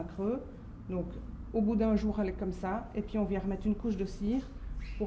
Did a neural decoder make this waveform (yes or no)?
no